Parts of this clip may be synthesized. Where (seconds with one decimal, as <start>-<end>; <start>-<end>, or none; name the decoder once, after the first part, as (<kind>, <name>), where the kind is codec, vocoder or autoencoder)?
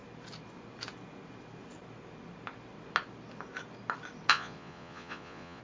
4.3-5.6 (vocoder, Vocos)